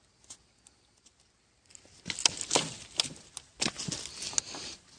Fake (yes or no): no